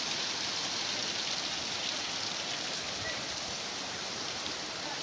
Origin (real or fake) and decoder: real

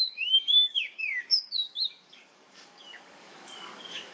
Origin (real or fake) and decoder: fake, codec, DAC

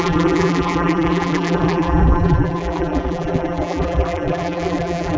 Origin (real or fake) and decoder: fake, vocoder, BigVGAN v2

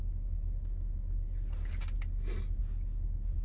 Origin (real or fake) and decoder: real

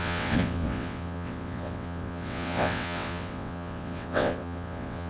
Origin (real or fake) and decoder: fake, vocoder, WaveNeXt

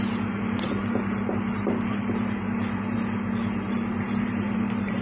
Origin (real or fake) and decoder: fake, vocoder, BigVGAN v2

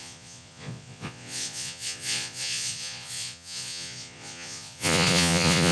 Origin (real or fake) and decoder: fake, vocoder, Vocos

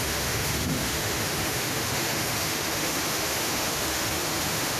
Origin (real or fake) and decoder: fake, autoencoder, DAC-VAE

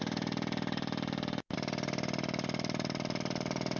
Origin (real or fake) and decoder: real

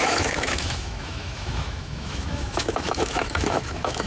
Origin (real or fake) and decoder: fake, autoencoder, DAC-VAE